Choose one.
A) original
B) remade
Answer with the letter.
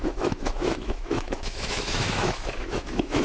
B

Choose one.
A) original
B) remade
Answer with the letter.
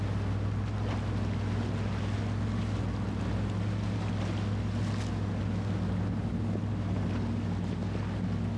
A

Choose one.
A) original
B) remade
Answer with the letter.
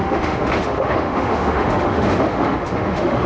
B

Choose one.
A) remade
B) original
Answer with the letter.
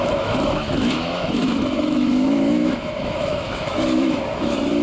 A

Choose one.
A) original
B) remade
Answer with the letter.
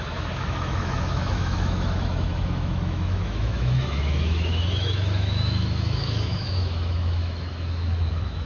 B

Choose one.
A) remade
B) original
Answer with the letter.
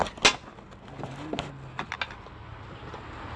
B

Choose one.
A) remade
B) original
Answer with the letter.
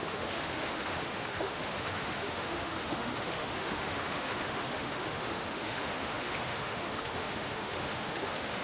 A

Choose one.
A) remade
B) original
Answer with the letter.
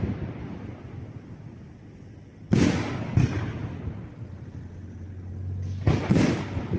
B